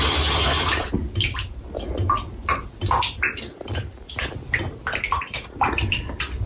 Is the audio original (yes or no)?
yes